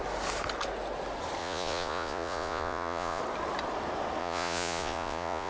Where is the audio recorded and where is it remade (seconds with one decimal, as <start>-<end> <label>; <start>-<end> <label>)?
0.0-1.4 recorded; 1.4-3.2 remade; 3.2-4.2 recorded; 4.2-5.5 remade